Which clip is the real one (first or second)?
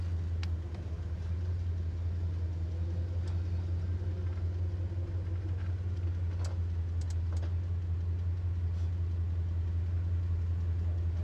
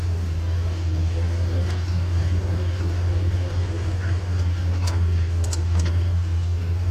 first